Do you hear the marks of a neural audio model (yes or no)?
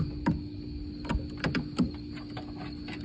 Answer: no